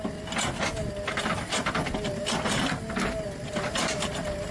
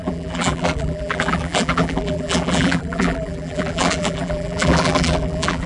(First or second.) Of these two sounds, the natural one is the first